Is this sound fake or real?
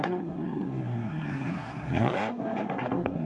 fake